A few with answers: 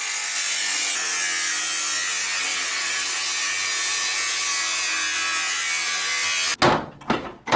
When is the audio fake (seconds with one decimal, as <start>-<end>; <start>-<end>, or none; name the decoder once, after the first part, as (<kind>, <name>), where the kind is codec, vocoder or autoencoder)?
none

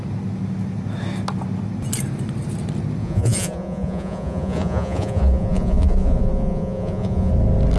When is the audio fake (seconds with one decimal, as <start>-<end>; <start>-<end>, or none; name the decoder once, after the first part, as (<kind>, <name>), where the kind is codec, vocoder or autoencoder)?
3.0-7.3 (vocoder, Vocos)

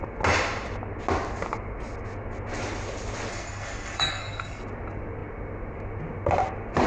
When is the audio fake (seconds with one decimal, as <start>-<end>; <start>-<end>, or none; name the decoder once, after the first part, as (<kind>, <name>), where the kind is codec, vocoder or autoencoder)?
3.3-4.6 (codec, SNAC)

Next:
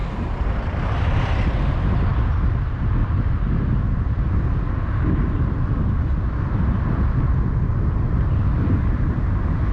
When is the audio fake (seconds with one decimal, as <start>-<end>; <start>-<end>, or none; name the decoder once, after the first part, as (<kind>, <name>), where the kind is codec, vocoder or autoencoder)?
0.0-1.3 (vocoder, BigVGAN v2)